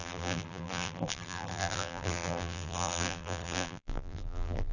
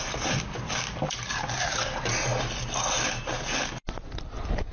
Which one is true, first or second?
second